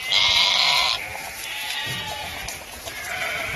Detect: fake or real fake